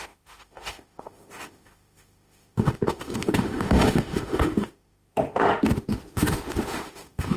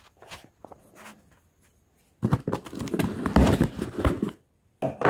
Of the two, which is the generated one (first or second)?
first